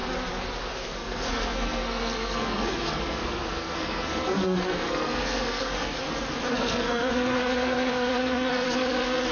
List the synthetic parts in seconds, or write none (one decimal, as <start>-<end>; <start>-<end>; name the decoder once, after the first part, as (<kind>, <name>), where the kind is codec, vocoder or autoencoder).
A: 0.6-6.0 (codec, SNAC); 6.5-9.3